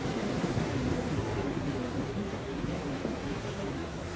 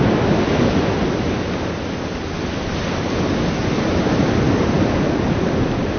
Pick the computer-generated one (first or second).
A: first